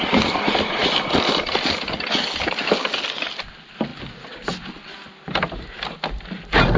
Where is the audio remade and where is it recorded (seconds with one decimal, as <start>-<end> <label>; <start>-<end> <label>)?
0.0-6.8 recorded